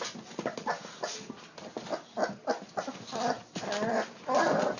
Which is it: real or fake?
real